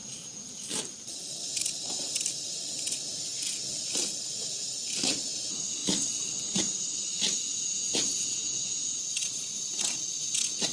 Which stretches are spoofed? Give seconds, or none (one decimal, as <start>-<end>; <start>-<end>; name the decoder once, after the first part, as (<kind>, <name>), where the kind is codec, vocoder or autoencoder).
0.0-0.7 (vocoder, Vocos); 3.3-3.8; 7.5-9.1